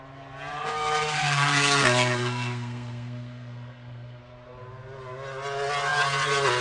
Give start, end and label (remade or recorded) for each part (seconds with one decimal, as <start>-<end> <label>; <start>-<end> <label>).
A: 0.0-0.5 recorded; 0.5-4.2 remade; 4.2-6.6 recorded